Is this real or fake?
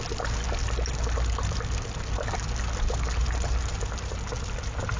real